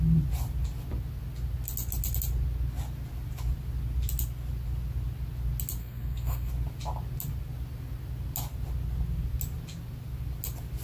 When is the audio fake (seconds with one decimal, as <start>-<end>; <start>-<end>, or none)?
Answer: 5.8-6.5